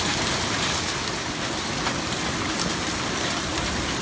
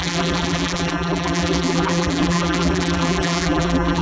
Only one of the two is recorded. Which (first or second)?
first